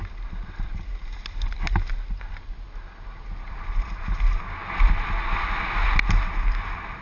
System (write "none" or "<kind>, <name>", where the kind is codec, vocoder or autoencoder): none